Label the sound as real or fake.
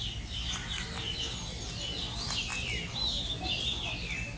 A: real